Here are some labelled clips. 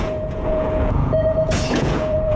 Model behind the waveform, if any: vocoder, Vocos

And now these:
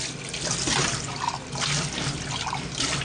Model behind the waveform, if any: none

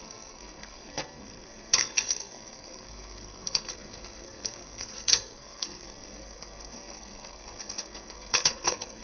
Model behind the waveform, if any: codec, SNAC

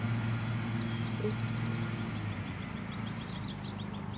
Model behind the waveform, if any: none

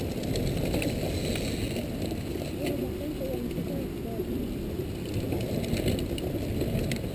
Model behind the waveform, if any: none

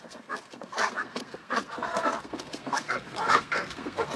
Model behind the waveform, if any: codec, SNAC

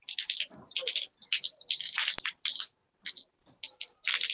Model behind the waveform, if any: none